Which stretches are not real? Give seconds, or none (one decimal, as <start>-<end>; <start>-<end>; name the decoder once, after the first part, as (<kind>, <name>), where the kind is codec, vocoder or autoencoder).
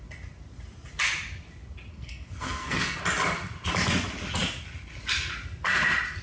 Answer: 1.9-3.0 (codec, SNAC)